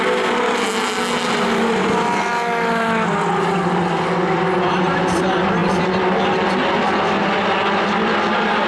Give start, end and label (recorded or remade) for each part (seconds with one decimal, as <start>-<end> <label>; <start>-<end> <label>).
0.0-8.7 recorded